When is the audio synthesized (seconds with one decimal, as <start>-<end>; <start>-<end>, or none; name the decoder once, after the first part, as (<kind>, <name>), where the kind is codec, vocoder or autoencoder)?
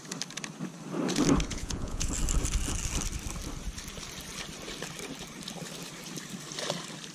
1.5-2.1 (vocoder, Vocos)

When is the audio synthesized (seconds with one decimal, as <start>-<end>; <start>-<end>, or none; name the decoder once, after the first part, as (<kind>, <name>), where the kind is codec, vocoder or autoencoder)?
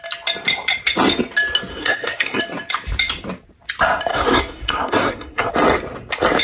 1.7-2.4 (codec, SNAC); 4.1-5.5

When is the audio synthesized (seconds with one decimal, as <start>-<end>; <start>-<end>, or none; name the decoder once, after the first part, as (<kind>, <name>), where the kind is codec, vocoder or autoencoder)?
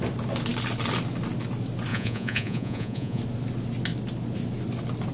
1.9-3.2 (vocoder, Vocos)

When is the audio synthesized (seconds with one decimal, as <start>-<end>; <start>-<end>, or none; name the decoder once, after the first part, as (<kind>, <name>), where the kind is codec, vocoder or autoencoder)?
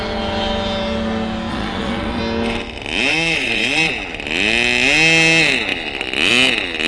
1.5-2.2 (vocoder, Vocos); 3.1-3.9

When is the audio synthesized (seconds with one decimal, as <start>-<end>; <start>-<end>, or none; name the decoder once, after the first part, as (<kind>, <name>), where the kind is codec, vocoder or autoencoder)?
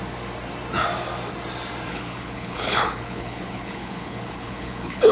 1.9-5.1 (codec, HILCodec)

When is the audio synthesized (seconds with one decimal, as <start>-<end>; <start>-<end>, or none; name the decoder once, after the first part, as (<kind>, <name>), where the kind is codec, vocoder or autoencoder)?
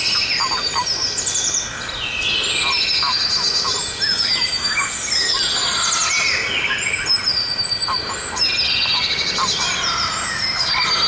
none